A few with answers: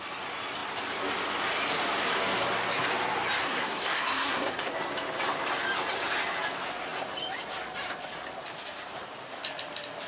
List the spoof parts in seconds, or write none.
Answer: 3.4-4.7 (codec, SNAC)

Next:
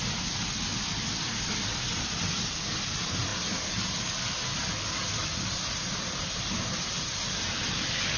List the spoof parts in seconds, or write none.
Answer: none

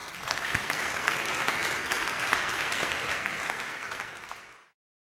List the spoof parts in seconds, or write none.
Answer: 0.0-5.1 (codec, SNAC)

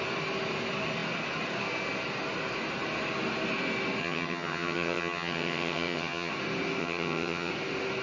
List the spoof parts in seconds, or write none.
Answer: 4.0-6.3 (vocoder, HiFi-GAN); 6.8-7.5

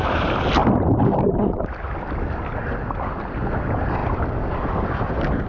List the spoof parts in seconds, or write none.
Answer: none

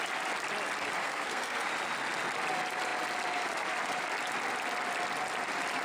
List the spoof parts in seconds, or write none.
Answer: 1.0-1.7 (codec, SNAC)

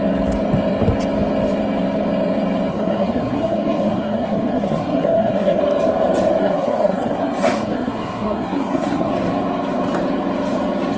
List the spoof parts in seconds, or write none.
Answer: 2.7-5.6 (codec, SNAC); 6.4-9.1

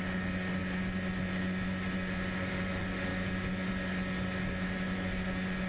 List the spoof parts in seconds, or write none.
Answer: none